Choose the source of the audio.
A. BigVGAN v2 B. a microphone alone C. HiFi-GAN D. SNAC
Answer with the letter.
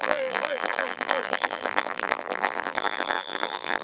A